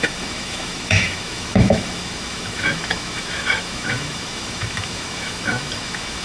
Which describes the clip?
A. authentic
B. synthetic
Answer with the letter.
B